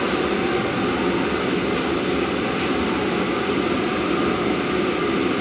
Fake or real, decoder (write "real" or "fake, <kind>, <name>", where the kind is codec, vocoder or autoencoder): real